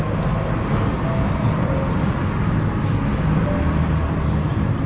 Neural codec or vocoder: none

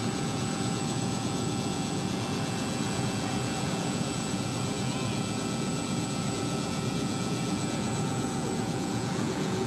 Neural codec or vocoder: vocoder, Vocos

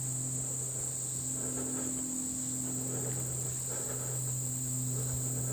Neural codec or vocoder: none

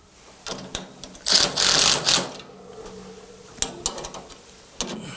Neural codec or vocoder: none